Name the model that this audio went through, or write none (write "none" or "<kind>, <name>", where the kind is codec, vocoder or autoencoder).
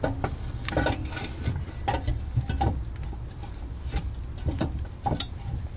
none